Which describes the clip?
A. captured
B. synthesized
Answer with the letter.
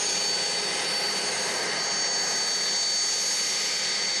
A